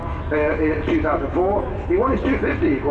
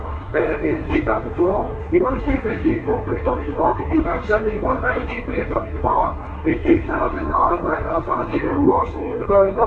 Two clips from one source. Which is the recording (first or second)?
first